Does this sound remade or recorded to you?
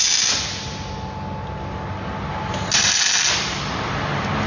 recorded